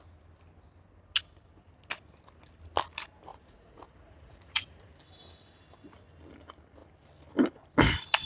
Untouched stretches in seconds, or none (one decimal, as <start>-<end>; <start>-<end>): 0.0-3.3; 4.9-8.3